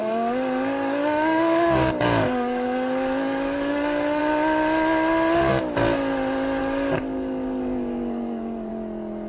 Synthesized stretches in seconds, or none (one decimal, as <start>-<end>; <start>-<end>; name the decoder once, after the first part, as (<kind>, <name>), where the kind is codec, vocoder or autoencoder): 0.0-4.2 (codec, DAC); 6.6-8.7